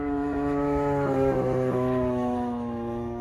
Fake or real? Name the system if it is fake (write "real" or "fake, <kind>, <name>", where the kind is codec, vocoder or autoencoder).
fake, autoencoder, DAC-VAE